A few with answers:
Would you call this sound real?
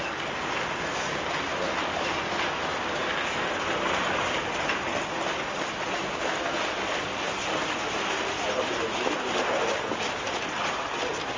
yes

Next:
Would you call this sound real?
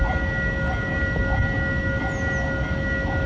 yes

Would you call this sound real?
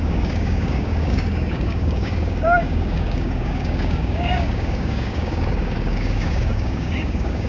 no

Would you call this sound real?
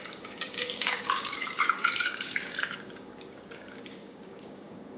no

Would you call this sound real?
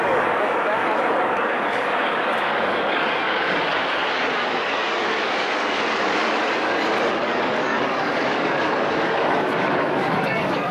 no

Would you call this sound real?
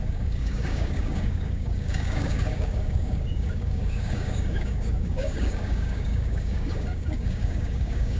no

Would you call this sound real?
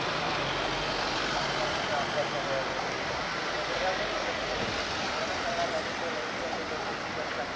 yes